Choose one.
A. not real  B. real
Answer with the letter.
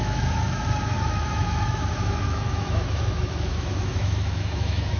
A